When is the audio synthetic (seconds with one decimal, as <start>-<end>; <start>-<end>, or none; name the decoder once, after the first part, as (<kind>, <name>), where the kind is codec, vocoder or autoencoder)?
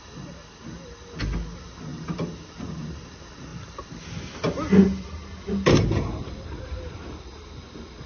3.5-4.1 (vocoder, BigVGAN v2)